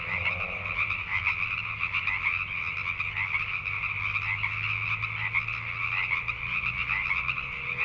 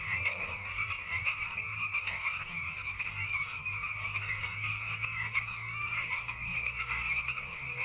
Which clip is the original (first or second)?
first